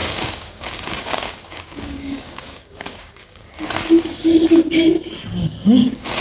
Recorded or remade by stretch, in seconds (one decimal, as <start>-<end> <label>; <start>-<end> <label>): 0.0-3.7 remade; 3.7-5.4 recorded; 5.4-6.2 remade